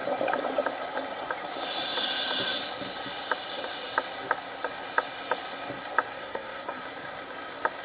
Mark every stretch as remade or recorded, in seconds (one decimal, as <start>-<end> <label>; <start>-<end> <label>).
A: 0.0-6.1 recorded; 6.1-6.8 remade; 6.8-7.8 recorded